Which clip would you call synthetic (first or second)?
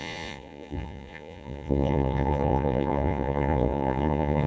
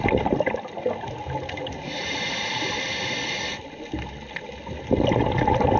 first